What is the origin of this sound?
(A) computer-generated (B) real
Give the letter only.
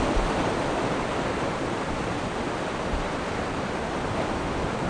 B